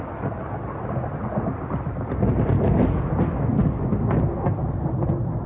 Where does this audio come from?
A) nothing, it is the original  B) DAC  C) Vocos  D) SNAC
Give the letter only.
A